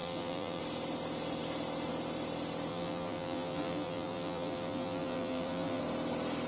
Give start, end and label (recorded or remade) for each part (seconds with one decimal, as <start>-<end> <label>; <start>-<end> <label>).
0.0-0.6 remade; 0.6-2.7 recorded; 2.7-5.8 remade; 5.8-6.5 recorded